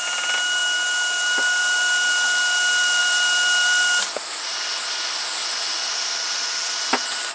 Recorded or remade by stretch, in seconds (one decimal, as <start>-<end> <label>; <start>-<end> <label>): 0.0-7.3 recorded